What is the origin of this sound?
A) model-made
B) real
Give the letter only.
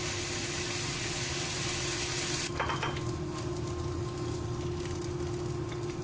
B